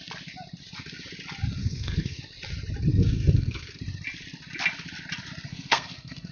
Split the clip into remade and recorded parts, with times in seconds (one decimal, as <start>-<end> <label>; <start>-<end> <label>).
0.0-1.6 recorded; 1.6-2.2 remade; 2.2-2.9 recorded; 2.9-3.8 remade; 3.8-5.5 recorded; 5.5-6.3 remade